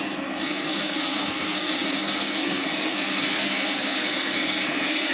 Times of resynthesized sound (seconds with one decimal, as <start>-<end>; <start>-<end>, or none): 0.0-5.1